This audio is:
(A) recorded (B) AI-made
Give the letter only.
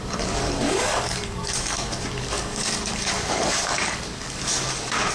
B